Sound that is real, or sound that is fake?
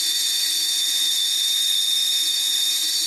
fake